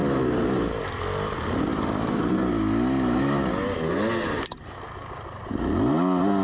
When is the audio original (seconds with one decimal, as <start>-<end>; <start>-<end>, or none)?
0.0-6.4